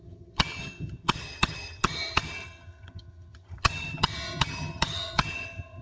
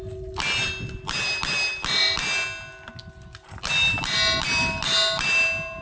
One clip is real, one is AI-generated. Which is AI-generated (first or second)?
first